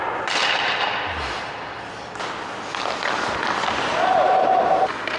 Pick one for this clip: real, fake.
real